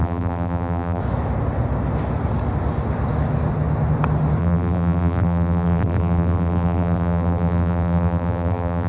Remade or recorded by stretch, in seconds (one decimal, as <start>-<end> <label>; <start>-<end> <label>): 0.0-1.0 remade; 1.0-4.4 recorded; 4.4-8.9 remade

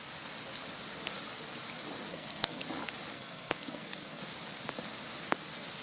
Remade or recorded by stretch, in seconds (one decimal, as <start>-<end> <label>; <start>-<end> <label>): 0.0-2.1 recorded; 2.1-2.6 remade; 2.6-3.1 recorded; 3.1-4.2 remade; 4.2-5.8 recorded

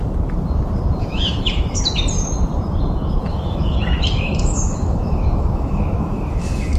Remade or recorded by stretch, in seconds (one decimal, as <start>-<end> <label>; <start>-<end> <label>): 0.0-1.0 recorded; 1.0-1.8 remade; 1.8-3.3 recorded; 3.3-6.8 remade

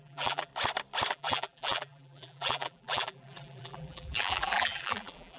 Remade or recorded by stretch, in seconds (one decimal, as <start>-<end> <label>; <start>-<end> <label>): 0.0-0.5 remade; 0.5-1.1 recorded; 1.1-5.4 remade